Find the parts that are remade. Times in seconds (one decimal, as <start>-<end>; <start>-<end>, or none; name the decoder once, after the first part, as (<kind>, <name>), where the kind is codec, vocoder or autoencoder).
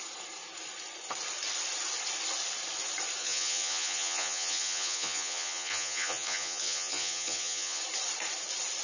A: 3.2-7.8 (vocoder, Vocos)